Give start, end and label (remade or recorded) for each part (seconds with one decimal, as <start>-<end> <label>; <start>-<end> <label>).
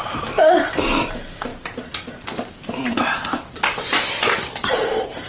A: 0.0-1.5 remade; 1.5-4.7 recorded; 4.7-5.3 remade